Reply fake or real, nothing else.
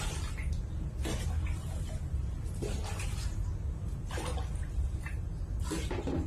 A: real